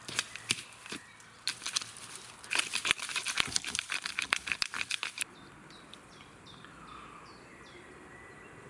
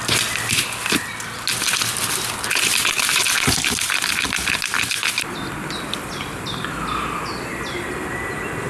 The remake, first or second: first